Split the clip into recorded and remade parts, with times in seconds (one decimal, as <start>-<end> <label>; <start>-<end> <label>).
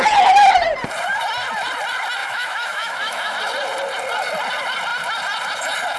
0.0-2.2 recorded; 2.2-3.4 remade; 3.4-6.0 recorded